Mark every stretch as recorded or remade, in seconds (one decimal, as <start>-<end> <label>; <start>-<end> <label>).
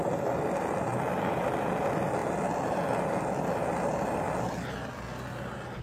0.0-5.8 recorded